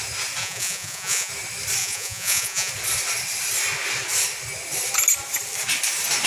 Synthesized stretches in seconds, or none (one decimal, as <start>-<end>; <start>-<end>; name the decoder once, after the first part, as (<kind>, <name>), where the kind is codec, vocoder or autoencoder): 0.4-1.3 (vocoder, Vocos); 1.8-2.7